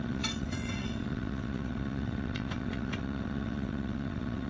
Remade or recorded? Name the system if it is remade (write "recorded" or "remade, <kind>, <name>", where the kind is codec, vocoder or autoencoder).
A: remade, vocoder, WaveNeXt